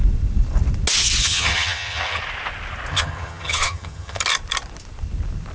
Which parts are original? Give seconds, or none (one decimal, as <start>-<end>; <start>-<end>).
0.0-1.2; 2.2-2.9; 4.2-5.5